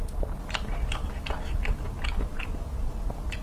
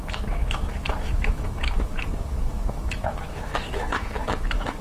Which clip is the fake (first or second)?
second